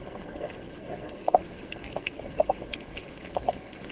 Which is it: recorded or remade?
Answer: remade